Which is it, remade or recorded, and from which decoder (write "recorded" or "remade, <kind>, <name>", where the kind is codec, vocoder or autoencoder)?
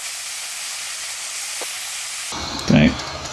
recorded